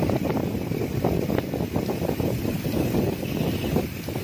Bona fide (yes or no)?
no